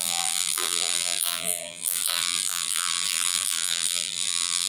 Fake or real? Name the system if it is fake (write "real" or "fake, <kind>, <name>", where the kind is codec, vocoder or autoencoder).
fake, vocoder, BigVGAN v2